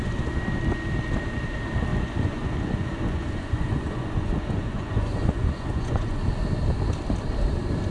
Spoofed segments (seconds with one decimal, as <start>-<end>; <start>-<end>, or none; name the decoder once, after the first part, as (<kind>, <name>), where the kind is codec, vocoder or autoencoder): 1.9-6.2 (vocoder, Vocos)